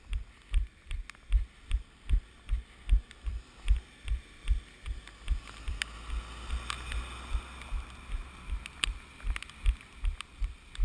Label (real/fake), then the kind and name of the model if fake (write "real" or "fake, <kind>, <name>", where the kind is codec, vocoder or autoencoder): real